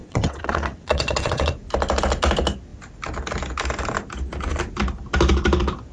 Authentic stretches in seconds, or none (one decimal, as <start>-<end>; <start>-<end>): 1.5-5.9